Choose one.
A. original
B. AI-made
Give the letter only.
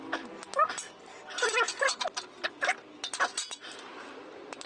A